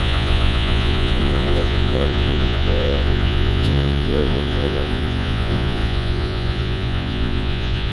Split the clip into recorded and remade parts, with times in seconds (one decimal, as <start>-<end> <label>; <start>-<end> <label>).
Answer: 0.0-7.9 remade